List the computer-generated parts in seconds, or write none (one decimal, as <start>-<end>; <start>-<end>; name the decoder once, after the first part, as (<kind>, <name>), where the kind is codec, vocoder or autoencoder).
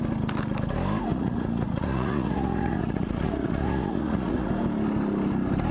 1.1-4.5 (vocoder, Vocos)